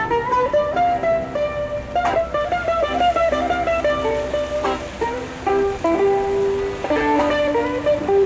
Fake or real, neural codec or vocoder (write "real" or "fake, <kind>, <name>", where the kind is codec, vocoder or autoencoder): real